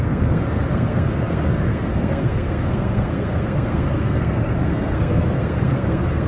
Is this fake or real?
fake